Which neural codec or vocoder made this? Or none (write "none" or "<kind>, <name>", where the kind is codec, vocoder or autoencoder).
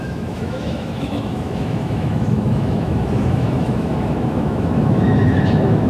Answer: autoencoder, DAC-VAE